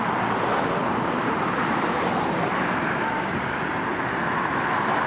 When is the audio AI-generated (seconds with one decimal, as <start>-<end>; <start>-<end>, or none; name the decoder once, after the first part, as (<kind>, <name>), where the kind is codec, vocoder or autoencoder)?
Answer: 0.8-3.9 (vocoder, BigVGAN v2)